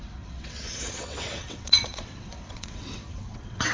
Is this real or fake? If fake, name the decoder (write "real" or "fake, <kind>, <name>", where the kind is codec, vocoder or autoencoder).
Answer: fake, vocoder, WaveNeXt